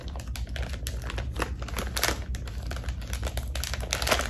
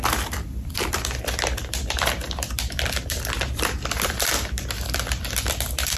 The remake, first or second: second